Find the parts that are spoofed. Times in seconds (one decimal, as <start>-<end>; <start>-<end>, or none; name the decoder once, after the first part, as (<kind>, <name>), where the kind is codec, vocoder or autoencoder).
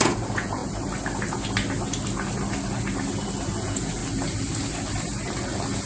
0.0-0.6 (vocoder, Vocos); 3.6-4.0